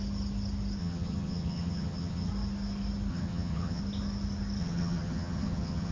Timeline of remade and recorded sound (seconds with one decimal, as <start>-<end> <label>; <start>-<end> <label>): 0.0-0.8 recorded; 0.8-2.3 remade; 2.3-3.1 recorded; 3.1-3.8 remade; 3.8-4.6 recorded; 4.6-5.9 remade